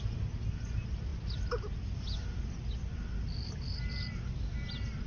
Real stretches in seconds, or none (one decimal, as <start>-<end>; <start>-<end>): 0.0-5.1